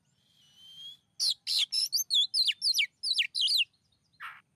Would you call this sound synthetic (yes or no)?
no